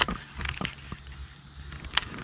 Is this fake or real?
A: real